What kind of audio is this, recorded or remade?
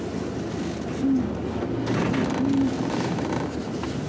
recorded